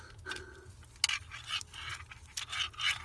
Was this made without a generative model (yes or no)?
yes